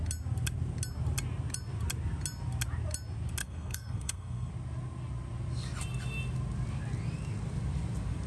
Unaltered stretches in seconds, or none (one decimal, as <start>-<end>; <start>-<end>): 0.0-3.4; 4.5-8.3